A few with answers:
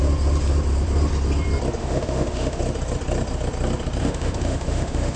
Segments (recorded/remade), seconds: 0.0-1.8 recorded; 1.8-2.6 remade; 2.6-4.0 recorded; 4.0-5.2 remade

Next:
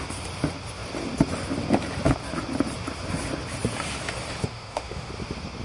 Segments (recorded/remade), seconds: 0.0-4.4 recorded; 4.4-5.1 remade; 5.1-5.6 recorded